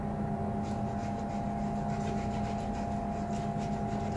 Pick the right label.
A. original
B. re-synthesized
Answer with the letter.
A